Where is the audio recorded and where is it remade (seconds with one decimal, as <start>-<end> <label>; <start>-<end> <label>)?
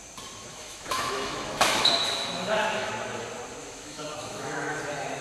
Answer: 0.0-0.5 recorded; 0.5-2.9 remade; 2.9-3.6 recorded; 3.6-4.8 remade; 4.8-5.2 recorded